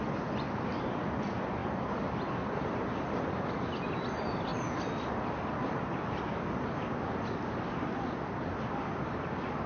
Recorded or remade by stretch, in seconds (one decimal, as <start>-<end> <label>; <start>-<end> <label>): 0.0-9.7 recorded